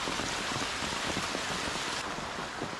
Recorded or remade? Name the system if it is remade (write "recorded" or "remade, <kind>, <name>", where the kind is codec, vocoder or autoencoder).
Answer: recorded